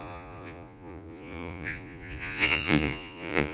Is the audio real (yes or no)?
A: no